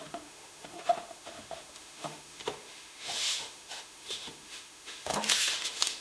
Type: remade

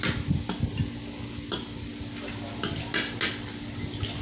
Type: recorded